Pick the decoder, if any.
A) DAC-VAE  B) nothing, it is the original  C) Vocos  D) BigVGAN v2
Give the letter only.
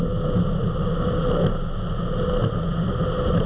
B